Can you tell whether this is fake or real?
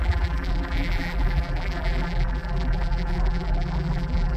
fake